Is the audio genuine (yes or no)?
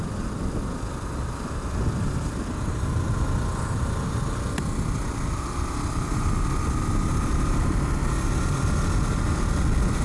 yes